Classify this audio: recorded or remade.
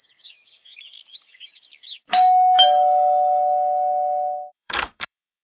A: remade